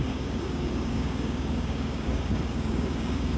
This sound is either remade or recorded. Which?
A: remade